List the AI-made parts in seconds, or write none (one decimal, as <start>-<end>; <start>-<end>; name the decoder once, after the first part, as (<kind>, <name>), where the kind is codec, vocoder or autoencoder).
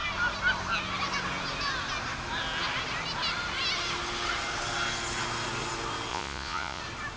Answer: 6.1-6.8 (vocoder, Vocos)